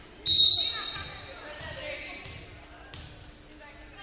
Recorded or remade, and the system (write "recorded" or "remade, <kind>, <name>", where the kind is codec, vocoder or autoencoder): recorded